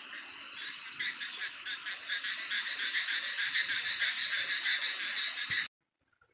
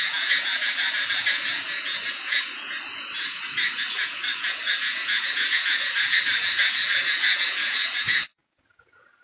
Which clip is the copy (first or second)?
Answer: second